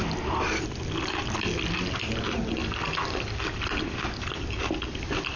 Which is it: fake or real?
real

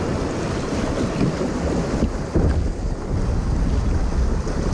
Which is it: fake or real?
real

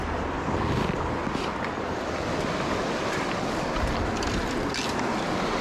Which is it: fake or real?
real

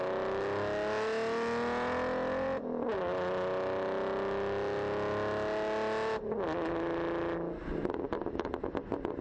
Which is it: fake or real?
real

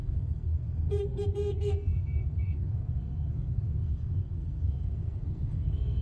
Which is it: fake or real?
fake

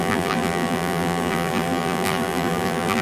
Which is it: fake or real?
fake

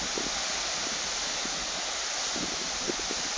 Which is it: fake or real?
real